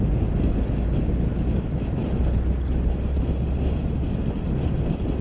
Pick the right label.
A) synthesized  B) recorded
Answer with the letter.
B